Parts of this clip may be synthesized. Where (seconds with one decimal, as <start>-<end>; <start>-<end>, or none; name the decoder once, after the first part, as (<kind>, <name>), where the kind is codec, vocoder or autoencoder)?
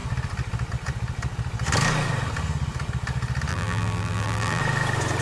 3.5-4.6 (vocoder, BigVGAN v2)